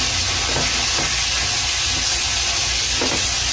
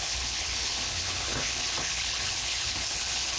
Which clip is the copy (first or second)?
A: second